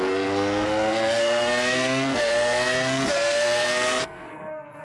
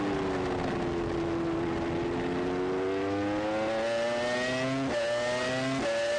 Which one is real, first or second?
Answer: second